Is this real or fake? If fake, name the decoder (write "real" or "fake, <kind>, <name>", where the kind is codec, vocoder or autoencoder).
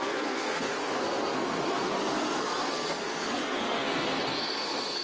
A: fake, codec, SNAC